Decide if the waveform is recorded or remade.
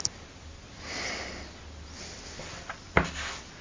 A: recorded